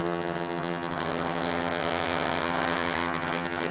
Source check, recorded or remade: remade